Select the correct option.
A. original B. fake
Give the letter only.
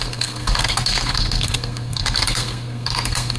B